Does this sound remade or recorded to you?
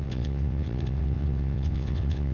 remade